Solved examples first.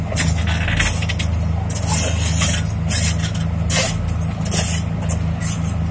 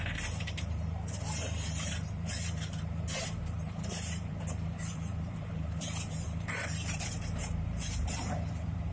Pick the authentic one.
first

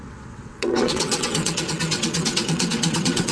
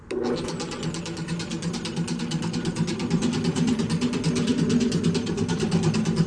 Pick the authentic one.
second